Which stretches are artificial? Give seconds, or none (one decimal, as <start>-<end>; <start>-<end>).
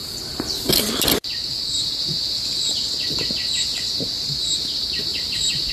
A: 0.0-0.7; 1.4-1.9; 5.1-5.7